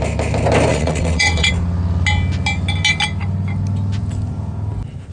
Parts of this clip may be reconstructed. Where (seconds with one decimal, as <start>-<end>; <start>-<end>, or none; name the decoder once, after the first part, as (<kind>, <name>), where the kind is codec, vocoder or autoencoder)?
0.7-1.5 (vocoder, WaveNeXt)